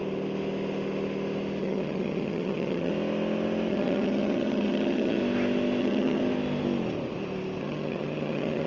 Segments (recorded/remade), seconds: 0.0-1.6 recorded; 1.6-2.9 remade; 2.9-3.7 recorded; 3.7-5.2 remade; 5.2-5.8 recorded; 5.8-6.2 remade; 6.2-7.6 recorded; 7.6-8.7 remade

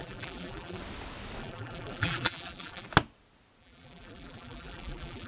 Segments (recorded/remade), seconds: 0.0-0.8 remade; 0.8-1.4 recorded; 1.4-2.9 remade; 2.9-3.6 recorded; 3.6-5.3 remade

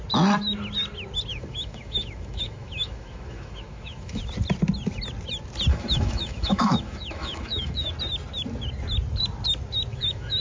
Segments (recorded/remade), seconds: 0.0-1.3 recorded; 1.3-4.2 remade; 4.2-5.7 recorded; 5.7-7.9 remade; 7.9-9.9 recorded; 9.9-10.4 remade